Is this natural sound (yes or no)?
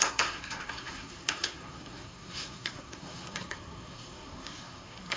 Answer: no